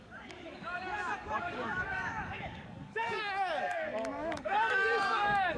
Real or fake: fake